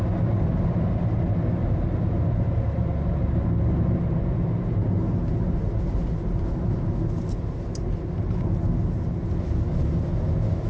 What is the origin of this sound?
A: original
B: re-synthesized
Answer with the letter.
A